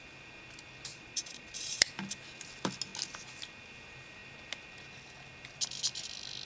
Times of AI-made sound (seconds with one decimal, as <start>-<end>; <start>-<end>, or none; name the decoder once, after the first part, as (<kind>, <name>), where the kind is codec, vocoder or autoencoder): 0.9-1.9 (vocoder, Vocos)